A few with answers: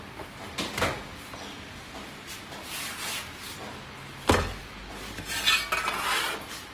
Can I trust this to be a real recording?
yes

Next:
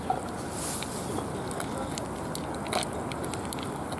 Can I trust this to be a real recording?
yes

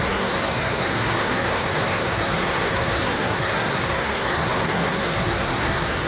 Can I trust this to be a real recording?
no